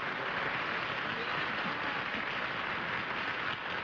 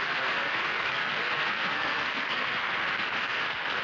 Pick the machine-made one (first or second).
second